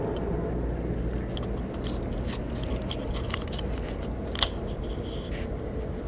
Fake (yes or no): no